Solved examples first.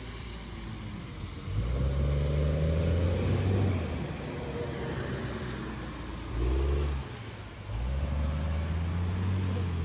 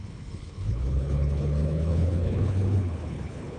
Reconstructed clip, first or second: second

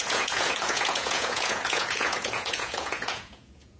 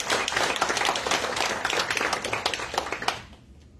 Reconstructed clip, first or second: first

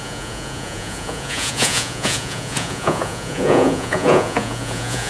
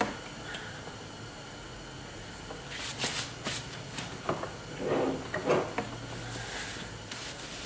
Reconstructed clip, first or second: first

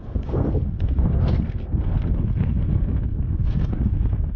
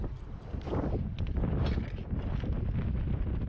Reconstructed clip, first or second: first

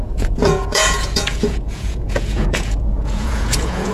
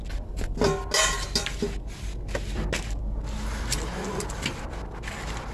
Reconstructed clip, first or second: first